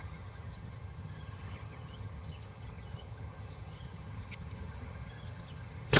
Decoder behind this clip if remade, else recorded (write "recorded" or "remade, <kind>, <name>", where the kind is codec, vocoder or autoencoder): remade, vocoder, HiFi-GAN